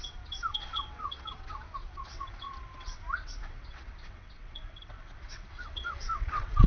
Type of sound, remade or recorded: remade